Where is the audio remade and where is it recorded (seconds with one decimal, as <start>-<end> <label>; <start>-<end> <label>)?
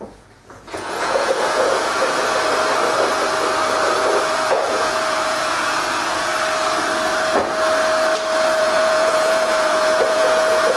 0.0-2.0 remade; 2.0-4.3 recorded; 4.3-6.3 remade; 6.3-8.6 recorded; 8.6-10.8 remade